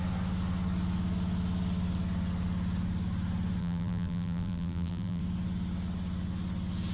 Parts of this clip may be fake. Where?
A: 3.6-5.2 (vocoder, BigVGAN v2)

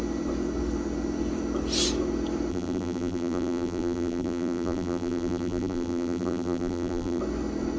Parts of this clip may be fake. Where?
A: 2.5-7.2 (vocoder, BigVGAN v2)